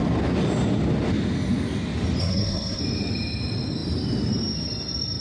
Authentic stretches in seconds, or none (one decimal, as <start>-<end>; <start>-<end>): 0.0-2.2; 2.8-5.2